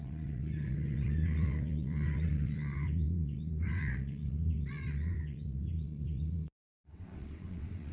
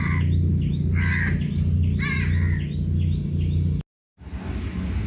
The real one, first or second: second